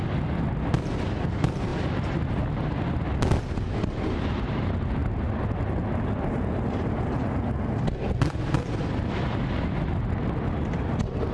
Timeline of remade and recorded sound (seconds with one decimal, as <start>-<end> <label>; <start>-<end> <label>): 0.0-11.3 recorded